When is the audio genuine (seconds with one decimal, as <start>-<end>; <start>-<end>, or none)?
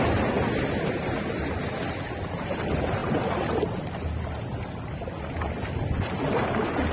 0.0-6.9